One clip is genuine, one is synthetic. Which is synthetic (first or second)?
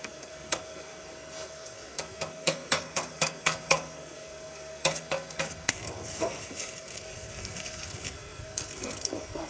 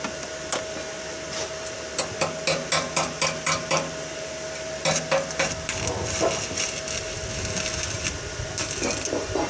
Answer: first